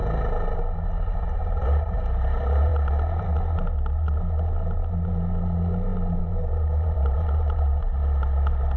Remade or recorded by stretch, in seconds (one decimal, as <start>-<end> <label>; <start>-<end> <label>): 0.0-1.2 recorded; 1.2-2.7 remade; 2.7-6.2 recorded; 6.2-8.0 remade; 8.0-8.8 recorded